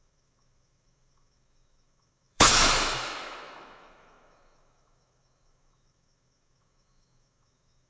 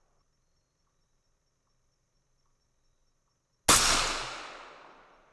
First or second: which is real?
second